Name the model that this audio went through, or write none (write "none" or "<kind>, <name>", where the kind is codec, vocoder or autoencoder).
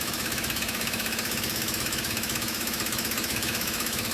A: autoencoder, DAC-VAE